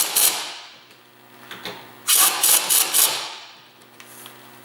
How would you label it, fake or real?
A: real